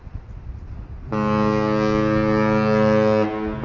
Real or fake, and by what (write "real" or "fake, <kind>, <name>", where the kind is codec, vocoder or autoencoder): real